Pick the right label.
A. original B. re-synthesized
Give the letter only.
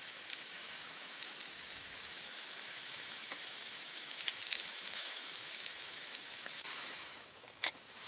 B